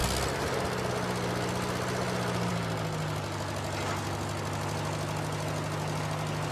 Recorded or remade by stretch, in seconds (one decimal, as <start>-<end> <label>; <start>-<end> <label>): 0.0-6.5 recorded